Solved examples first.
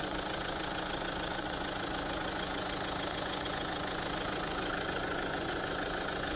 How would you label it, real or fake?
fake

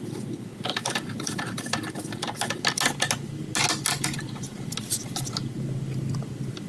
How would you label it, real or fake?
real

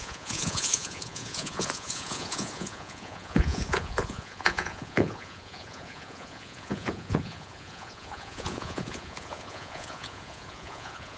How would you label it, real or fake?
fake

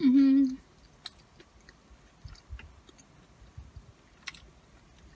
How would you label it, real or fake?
real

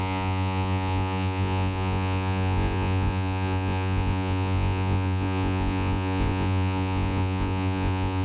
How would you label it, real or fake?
fake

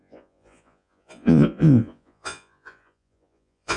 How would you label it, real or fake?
fake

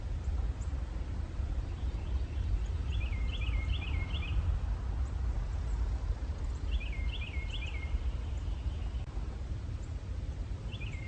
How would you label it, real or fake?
real